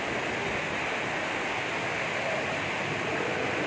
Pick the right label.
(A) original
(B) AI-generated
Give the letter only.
A